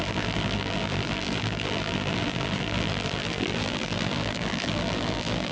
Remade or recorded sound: remade